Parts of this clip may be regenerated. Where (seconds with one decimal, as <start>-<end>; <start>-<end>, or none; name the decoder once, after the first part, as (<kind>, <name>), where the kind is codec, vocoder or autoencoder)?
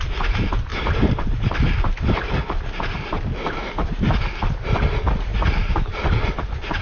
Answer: 0.7-2.7 (vocoder, BigVGAN v2); 5.3-5.9